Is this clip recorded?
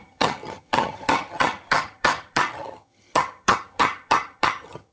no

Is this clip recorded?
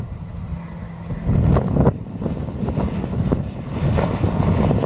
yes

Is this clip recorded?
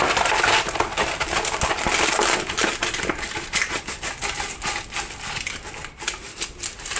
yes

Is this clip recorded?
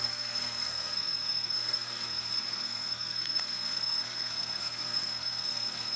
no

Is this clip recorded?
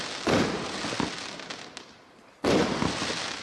yes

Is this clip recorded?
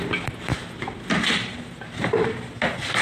yes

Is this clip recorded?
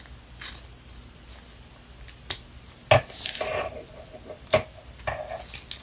yes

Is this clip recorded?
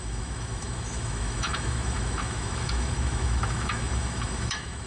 no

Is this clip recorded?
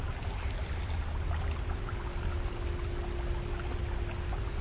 yes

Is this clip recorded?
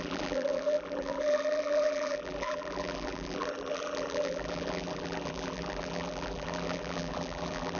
no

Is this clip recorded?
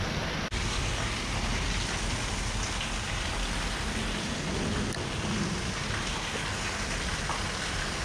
yes